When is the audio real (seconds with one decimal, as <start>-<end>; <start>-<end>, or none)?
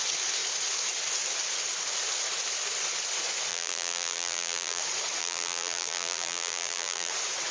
0.0-3.5; 4.8-5.2; 7.1-7.5